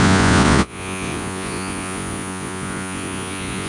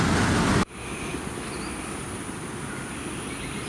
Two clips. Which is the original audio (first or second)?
second